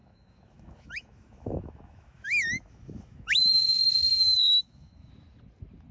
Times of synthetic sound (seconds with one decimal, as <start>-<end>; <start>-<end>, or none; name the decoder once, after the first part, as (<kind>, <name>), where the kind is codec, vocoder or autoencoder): 0.0-3.5 (autoencoder, DAC-VAE); 4.1-5.1